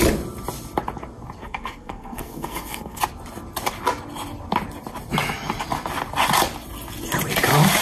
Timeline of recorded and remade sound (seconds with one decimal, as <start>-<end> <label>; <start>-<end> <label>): 0.0-1.4 recorded; 1.4-3.0 remade; 3.0-7.8 recorded